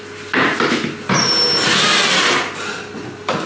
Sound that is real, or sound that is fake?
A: real